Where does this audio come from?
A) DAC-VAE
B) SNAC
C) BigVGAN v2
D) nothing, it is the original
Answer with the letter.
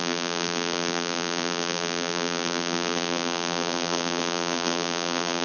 C